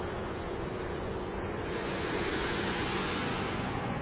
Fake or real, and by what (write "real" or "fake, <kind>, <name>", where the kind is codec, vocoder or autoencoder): fake, vocoder, Vocos